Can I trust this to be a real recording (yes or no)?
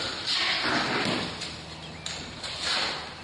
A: yes